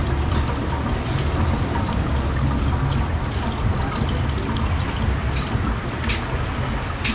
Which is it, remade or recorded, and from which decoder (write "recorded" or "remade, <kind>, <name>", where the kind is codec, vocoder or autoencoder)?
recorded